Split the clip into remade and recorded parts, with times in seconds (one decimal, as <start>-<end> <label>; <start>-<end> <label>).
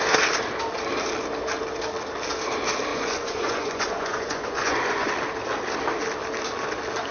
0.0-2.9 recorded; 2.9-5.1 remade; 5.1-7.1 recorded